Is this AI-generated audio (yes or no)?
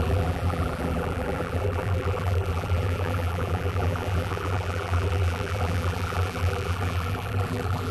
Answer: yes